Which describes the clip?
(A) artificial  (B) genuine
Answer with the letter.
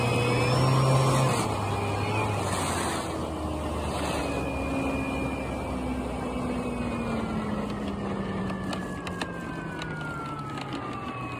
B